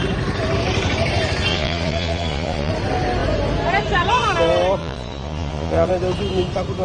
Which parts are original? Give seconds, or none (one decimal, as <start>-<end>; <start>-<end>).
0.0-1.5; 2.7-4.8; 5.9-6.8